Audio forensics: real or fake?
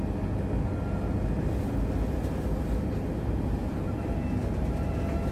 real